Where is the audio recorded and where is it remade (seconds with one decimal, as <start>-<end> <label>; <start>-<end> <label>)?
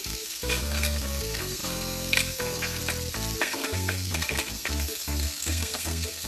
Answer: 0.0-2.8 remade; 2.8-3.4 recorded; 3.4-6.3 remade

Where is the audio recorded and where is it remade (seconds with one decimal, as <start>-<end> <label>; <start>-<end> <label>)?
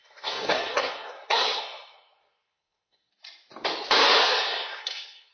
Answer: 0.0-3.1 remade; 3.1-4.2 recorded; 4.2-5.3 remade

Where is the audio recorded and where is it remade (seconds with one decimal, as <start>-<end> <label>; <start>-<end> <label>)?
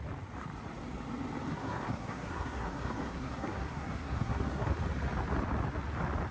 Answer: 0.0-1.5 recorded; 1.5-4.7 remade; 4.7-6.3 recorded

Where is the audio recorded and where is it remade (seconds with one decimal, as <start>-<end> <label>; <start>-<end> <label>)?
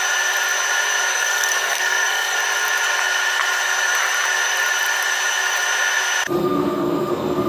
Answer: 0.0-1.1 recorded; 1.1-2.4 remade; 2.4-6.4 recorded; 6.4-7.5 remade